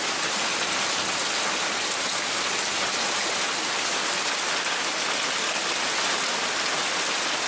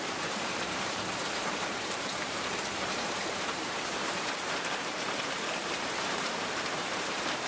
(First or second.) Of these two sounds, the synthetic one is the second